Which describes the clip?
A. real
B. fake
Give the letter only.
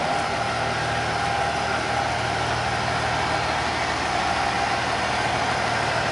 A